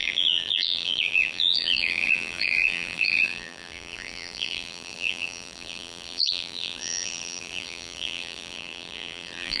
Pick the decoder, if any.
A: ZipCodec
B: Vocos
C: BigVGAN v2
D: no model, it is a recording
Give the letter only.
C